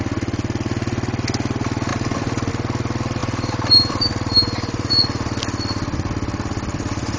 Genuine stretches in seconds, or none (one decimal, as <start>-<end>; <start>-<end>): 0.0-1.9; 2.5-3.2; 4.9-7.2